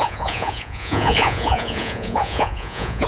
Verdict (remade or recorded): remade